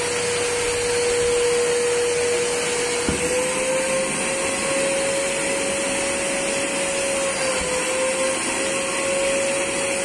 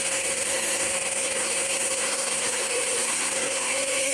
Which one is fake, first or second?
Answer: second